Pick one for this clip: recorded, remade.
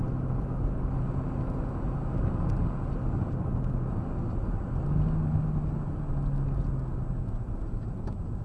recorded